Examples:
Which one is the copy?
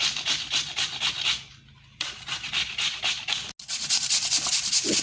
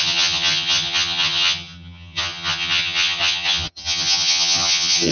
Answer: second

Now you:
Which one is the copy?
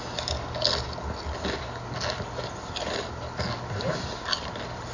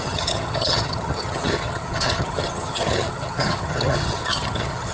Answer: second